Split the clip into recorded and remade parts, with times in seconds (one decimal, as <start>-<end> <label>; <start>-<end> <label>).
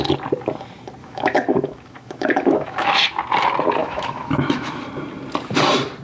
0.0-1.0 recorded; 1.0-3.1 remade; 3.1-3.8 recorded; 3.8-4.8 remade; 4.8-6.0 recorded